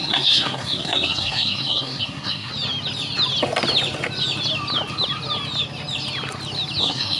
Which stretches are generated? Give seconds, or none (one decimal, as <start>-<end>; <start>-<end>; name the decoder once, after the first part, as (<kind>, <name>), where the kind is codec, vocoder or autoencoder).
0.0-2.5 (codec, SNAC); 6.8-7.2